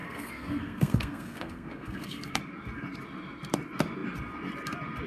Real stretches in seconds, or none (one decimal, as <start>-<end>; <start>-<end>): 2.4-5.1